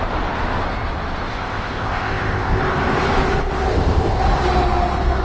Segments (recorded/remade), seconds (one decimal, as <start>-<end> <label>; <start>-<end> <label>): 0.0-1.3 recorded; 1.3-2.6 remade; 2.6-3.7 recorded; 3.7-4.2 remade; 4.2-5.2 recorded